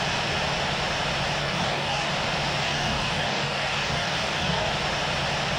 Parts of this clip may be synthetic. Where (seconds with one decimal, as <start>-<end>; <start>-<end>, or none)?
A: 1.4-2.1; 2.6-4.7